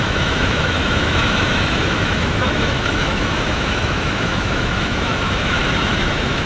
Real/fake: fake